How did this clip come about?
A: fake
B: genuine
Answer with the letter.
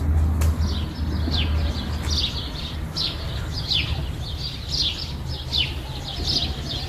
B